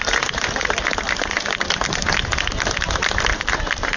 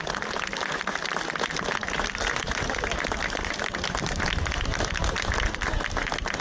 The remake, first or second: first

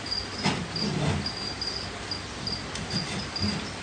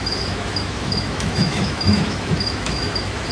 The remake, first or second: second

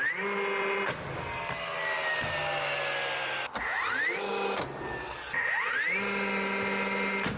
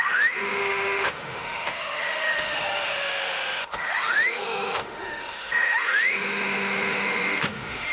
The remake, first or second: second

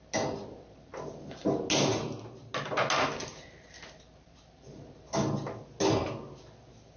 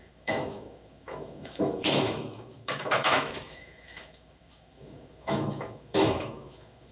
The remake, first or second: second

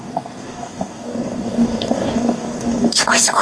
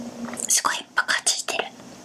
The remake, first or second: first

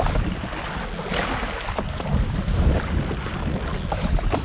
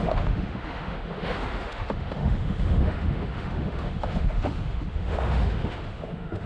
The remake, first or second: second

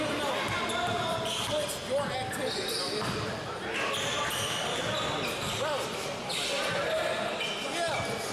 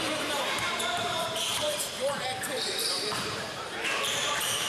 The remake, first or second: second